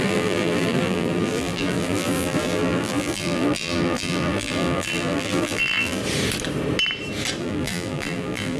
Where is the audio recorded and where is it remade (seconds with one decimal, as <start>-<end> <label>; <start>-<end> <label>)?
0.0-6.0 remade; 6.0-7.4 recorded; 7.4-8.6 remade